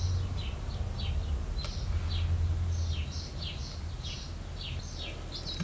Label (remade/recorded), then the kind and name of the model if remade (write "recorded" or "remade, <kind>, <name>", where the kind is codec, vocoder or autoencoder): recorded